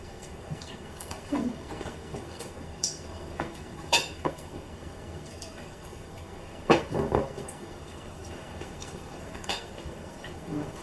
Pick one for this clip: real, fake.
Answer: fake